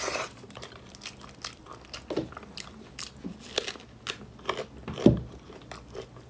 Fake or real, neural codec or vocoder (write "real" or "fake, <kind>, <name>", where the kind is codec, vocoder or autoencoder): real